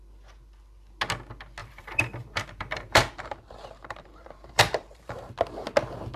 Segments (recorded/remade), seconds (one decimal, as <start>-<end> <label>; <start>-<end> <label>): 0.0-1.6 recorded; 1.6-5.3 remade; 5.3-6.2 recorded